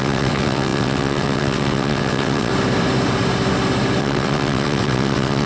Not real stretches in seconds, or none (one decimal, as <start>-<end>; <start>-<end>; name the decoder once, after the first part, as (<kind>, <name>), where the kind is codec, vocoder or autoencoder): 0.0-2.5 (vocoder, WaveNeXt); 4.0-5.5